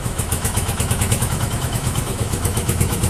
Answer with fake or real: fake